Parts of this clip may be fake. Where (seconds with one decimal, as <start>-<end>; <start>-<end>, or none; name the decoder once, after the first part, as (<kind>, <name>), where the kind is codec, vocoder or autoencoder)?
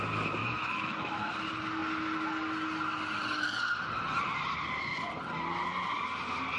0.4-1.3 (autoencoder, DAC-VAE)